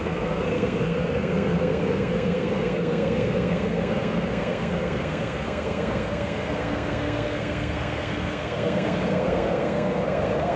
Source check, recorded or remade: remade